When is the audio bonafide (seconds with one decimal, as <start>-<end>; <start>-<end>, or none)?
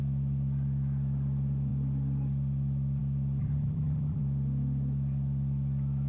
0.0-3.4; 4.2-6.1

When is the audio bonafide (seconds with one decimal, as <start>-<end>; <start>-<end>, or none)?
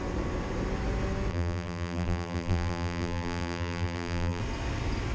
0.0-1.3; 4.4-5.1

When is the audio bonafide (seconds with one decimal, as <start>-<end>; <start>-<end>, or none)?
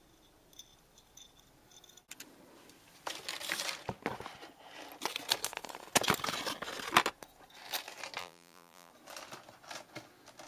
0.0-8.2; 8.9-10.5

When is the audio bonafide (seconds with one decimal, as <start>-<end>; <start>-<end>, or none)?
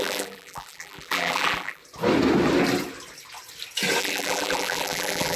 1.8-4.0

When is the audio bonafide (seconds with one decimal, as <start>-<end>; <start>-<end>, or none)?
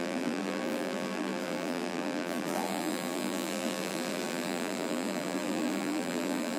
none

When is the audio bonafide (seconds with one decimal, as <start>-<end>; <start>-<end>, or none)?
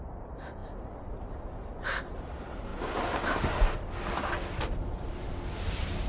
2.7-4.8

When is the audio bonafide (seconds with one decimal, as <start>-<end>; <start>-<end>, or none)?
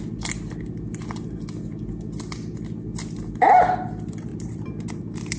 0.0-4.3; 5.0-5.4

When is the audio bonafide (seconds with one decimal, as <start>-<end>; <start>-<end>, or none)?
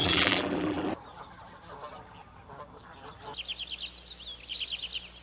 0.9-5.2